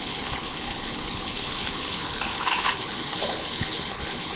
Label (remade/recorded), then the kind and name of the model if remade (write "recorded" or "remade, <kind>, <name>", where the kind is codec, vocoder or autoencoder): remade, codec, HILCodec